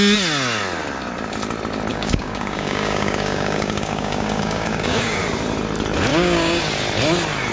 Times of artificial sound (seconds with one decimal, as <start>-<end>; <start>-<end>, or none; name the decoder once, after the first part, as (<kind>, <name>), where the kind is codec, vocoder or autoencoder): 1.9-5.2 (codec, DAC); 6.1-6.6